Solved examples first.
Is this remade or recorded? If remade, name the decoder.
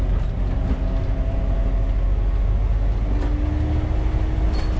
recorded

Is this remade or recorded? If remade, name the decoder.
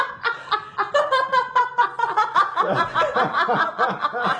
remade, vocoder, BigVGAN v2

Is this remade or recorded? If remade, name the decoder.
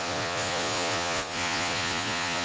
remade, vocoder, Vocos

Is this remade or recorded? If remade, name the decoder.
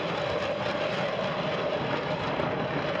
recorded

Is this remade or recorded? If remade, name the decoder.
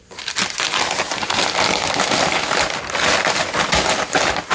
recorded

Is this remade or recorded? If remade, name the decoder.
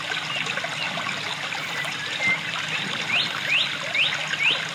recorded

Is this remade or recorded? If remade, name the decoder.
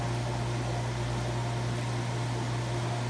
recorded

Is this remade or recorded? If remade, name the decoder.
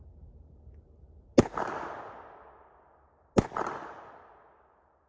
recorded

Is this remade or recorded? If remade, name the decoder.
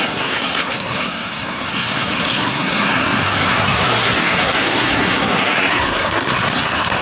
remade, codec, SNAC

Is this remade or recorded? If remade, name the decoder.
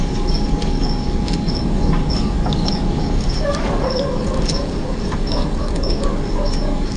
remade, codec, DAC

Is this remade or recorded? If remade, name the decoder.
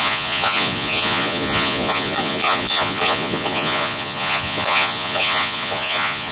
remade, vocoder, Vocos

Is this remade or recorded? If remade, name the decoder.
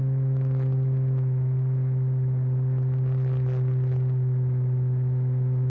recorded